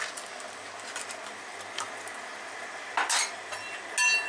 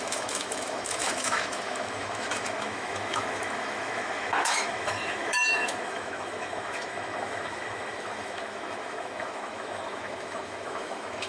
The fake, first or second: second